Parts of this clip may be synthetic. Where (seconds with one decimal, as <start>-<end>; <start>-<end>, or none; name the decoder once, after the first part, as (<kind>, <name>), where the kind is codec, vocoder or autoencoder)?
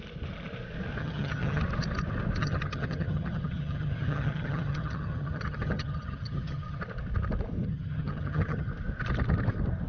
1.0-1.6 (vocoder, HiFi-GAN); 2.4-6.8; 7.6-8.7